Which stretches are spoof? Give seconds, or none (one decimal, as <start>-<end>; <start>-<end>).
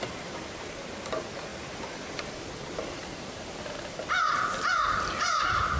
1.5-5.0